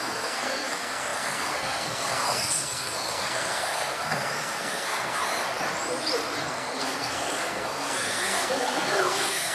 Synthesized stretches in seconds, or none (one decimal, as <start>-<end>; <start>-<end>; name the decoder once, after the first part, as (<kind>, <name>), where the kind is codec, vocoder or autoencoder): 0.0-5.2 (codec, SNAC); 6.4-9.5